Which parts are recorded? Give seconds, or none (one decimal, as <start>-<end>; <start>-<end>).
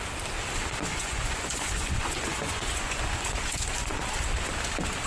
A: 0.0-0.9; 4.0-5.1